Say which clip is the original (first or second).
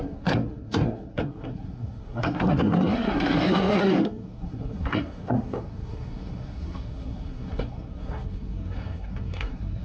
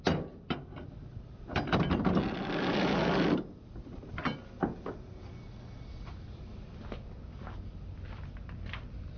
second